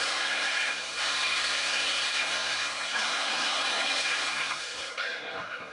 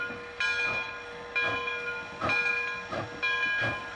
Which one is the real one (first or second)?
second